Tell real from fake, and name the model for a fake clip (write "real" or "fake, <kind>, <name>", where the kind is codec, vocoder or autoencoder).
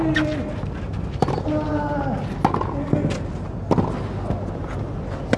real